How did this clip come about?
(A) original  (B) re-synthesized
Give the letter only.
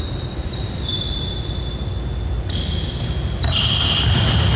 A